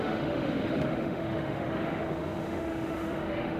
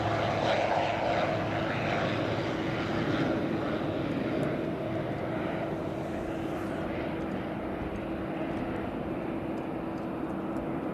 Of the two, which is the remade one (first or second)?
first